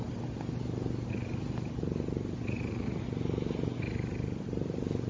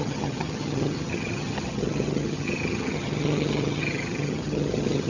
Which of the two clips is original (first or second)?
first